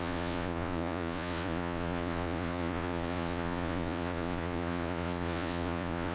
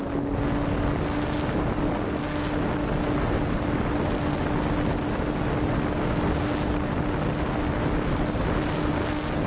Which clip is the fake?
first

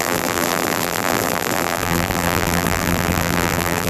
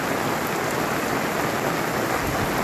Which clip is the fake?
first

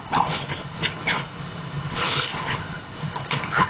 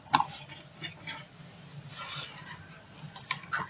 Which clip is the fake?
first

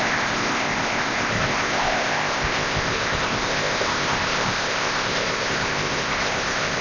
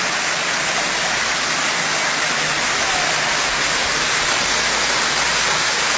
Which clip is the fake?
first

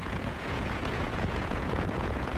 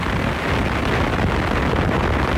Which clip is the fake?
first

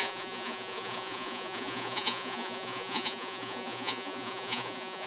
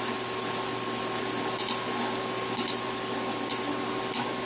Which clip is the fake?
first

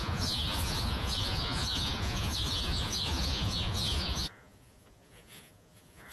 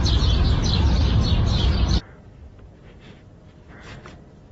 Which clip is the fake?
first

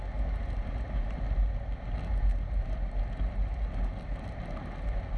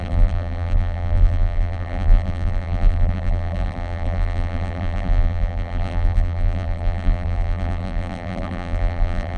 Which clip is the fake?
second